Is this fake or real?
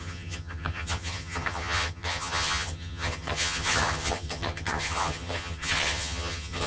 fake